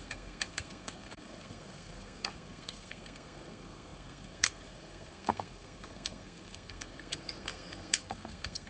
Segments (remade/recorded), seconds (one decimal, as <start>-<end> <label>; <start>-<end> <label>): 0.0-8.7 remade